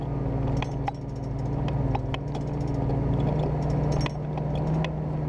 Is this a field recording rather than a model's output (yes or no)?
yes